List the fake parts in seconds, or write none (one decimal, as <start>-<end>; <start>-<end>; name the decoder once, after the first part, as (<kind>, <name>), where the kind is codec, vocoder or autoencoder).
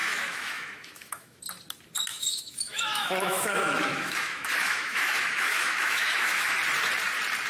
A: 0.0-1.4 (autoencoder, DAC-VAE); 2.1-6.6